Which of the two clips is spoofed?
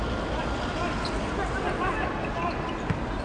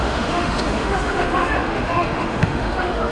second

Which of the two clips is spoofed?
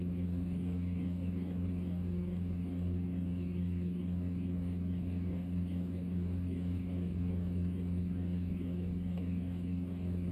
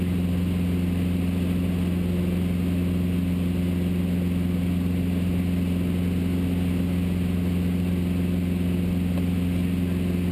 first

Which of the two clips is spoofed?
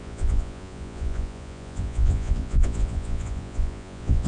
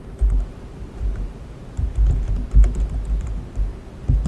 first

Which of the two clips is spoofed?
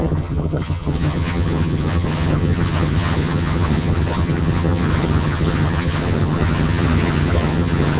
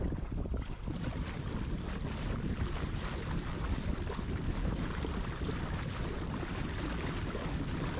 first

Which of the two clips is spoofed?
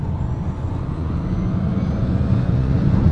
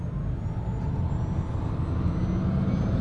first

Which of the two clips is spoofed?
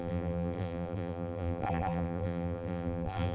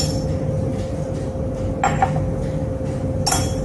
first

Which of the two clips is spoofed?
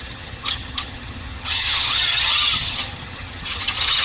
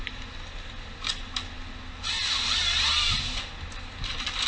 first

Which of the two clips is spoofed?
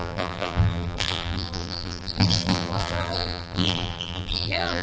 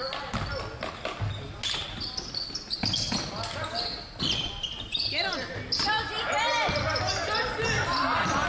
first